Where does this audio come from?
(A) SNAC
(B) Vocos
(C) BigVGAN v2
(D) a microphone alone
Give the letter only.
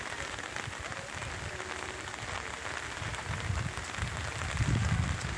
D